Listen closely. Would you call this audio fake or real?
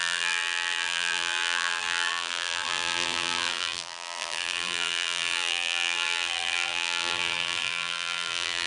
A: fake